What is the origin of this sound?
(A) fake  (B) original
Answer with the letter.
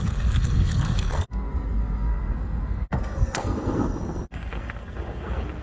A